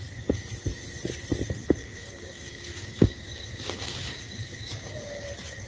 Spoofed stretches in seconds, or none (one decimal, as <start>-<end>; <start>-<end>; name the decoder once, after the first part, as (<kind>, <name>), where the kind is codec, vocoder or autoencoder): 1.8-5.2 (codec, DAC)